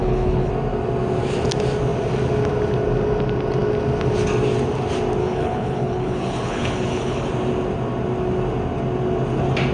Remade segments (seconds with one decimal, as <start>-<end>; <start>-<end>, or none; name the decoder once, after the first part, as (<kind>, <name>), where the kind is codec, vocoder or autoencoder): 0.0-0.5 (codec, HILCodec); 5.2-7.3